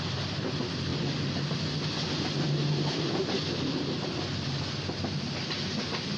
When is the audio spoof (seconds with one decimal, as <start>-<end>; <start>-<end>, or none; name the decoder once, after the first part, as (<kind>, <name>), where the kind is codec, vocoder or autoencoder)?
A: none